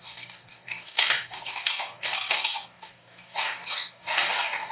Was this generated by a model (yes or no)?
yes